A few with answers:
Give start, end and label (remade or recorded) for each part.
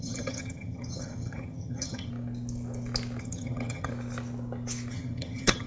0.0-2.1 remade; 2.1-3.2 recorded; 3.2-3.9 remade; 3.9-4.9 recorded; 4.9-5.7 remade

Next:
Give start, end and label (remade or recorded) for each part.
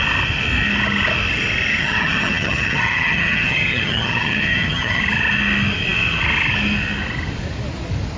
0.0-1.7 recorded; 1.7-5.0 remade; 5.0-8.2 recorded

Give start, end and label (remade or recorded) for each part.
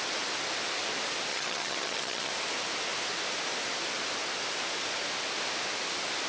0.0-1.3 recorded; 1.3-2.3 remade; 2.3-6.3 recorded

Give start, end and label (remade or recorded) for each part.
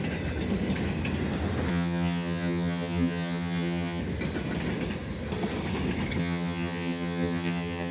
0.0-1.7 recorded; 1.7-4.0 remade; 4.0-6.2 recorded; 6.2-7.9 remade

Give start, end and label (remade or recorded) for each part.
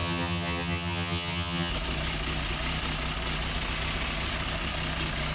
0.0-1.7 remade; 1.7-5.3 recorded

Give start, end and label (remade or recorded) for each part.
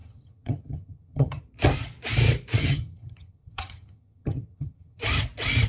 0.0-1.4 remade; 1.4-2.6 recorded; 2.6-5.0 remade; 5.0-5.7 recorded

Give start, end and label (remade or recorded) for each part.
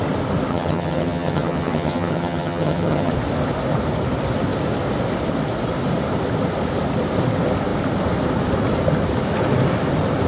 0.0-0.5 recorded; 0.5-3.1 remade; 3.1-10.3 recorded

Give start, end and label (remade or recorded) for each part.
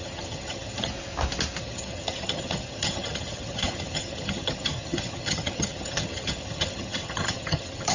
0.0-0.9 remade; 0.9-1.6 recorded; 1.6-7.9 remade